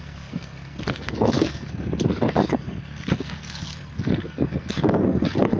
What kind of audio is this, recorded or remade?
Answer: remade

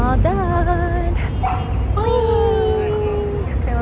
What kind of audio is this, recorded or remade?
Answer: recorded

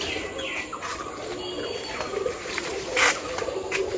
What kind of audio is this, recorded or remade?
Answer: recorded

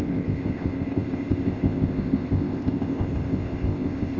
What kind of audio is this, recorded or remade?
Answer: remade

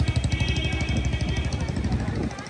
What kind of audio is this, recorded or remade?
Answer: recorded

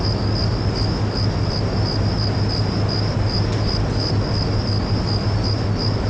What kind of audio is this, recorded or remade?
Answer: recorded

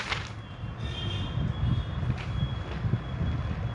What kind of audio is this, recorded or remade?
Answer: recorded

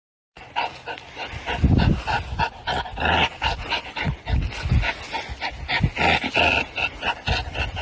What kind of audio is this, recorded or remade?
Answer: recorded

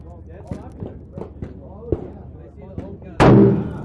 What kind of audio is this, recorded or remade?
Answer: recorded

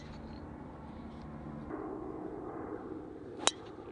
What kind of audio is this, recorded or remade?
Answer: recorded